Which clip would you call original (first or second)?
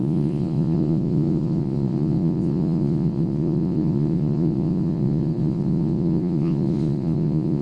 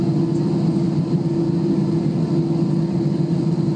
second